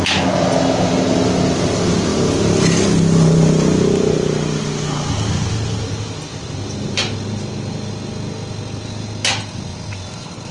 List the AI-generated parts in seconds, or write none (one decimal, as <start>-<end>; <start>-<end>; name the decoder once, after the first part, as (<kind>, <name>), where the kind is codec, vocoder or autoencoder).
none